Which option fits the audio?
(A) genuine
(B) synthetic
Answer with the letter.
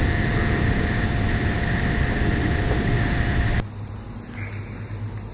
A